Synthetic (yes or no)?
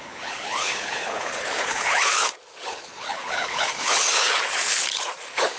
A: yes